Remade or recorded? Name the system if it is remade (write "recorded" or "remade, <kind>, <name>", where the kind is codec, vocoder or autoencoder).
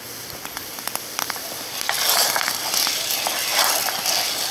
recorded